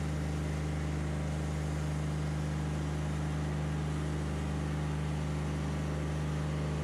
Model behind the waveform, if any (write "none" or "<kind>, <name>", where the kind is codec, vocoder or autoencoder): none